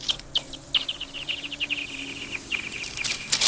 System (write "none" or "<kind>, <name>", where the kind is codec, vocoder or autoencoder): none